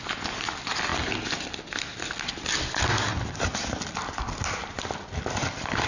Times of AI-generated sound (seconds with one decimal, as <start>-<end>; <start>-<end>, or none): none